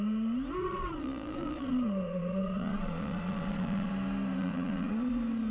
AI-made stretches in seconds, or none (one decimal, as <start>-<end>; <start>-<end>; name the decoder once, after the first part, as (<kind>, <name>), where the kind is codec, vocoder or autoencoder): 0.6-3.9 (vocoder, Vocos); 4.4-5.1